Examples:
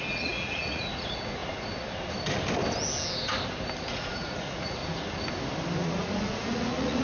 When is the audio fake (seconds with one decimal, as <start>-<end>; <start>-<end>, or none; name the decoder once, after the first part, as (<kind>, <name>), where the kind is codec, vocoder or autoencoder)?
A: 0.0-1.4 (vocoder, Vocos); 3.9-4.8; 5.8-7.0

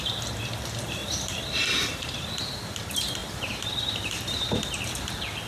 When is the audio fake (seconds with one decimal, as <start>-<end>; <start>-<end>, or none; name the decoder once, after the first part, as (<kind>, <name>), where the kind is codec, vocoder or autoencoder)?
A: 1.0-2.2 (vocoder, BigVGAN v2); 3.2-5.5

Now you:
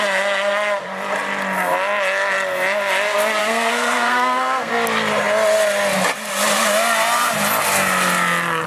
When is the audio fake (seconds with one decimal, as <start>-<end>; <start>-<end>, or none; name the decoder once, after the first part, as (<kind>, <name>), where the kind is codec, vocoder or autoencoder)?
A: 3.4-4.7 (codec, SNAC)

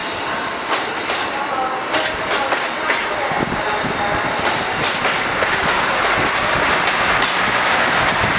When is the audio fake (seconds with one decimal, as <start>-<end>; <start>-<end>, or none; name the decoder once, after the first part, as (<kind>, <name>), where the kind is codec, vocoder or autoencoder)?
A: none

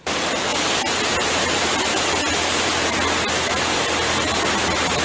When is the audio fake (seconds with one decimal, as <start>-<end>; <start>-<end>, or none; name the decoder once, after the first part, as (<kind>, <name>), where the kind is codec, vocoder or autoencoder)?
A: none

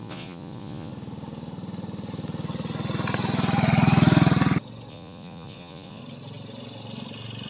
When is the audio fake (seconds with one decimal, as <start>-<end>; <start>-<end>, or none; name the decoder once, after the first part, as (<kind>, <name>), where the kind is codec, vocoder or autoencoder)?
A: 0.0-0.9 (vocoder, Vocos); 4.9-6.0

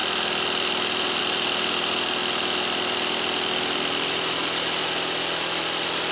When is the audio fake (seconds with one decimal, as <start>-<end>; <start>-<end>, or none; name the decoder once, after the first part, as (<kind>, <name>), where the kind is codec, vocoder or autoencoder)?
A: none

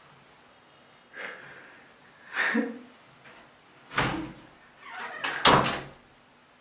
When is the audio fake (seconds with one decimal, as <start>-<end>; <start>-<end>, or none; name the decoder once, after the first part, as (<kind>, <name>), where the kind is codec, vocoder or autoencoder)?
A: 0.5-1.4 (codec, SNAC)